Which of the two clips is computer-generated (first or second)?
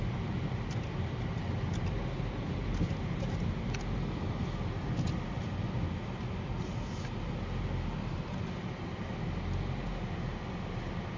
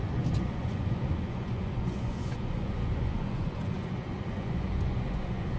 second